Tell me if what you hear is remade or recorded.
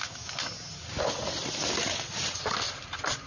recorded